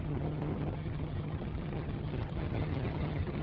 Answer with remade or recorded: remade